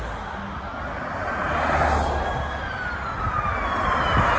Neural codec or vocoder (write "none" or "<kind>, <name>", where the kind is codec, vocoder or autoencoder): none